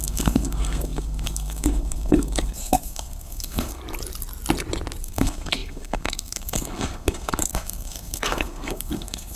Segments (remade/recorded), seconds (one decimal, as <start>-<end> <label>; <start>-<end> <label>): 0.0-3.8 remade; 3.8-5.0 recorded; 5.0-9.4 remade